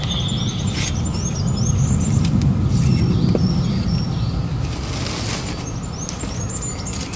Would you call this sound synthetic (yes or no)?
no